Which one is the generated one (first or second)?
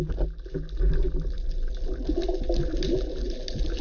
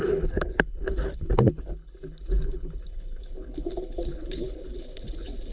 second